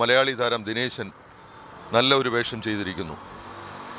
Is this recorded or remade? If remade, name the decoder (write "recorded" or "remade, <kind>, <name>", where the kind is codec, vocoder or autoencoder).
recorded